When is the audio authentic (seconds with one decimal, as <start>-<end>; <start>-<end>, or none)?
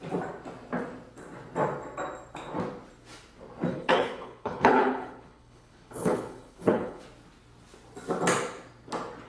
0.0-3.7; 7.0-9.3